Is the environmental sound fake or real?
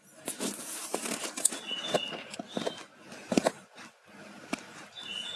real